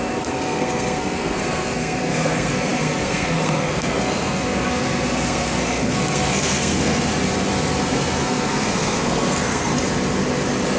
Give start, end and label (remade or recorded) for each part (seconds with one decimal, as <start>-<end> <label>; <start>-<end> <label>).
0.0-7.1 remade; 7.1-7.8 recorded; 7.8-9.7 remade; 9.7-10.8 recorded